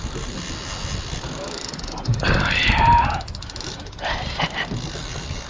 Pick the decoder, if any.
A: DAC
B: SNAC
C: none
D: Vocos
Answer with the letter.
C